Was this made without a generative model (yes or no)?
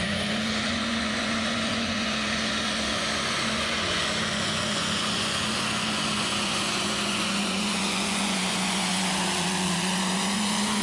no